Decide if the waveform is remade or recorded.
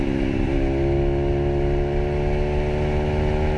recorded